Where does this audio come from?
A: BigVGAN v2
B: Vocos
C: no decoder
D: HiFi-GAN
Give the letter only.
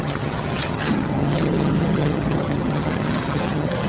D